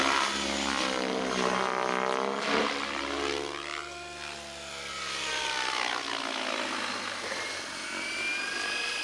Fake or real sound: real